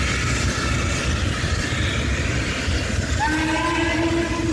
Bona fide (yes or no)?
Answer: yes